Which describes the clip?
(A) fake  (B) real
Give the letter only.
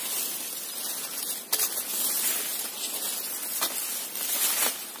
B